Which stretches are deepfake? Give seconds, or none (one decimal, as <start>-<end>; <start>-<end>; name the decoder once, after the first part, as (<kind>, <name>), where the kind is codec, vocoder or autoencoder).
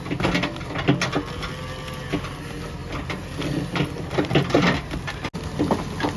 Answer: none